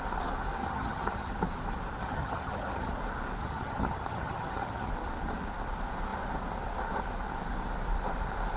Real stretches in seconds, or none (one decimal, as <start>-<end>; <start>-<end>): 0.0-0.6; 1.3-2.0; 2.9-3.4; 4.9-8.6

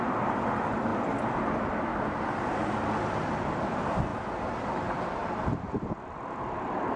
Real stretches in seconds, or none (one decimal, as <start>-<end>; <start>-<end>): 0.9-1.4; 1.9-3.5; 4.1-4.7

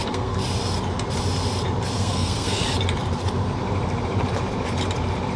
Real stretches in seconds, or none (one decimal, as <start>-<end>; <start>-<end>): 0.4-2.0; 2.6-5.4

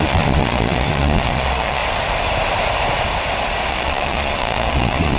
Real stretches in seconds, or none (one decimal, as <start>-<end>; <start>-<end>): 1.8-3.7